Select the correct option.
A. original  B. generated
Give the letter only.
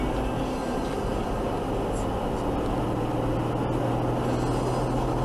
A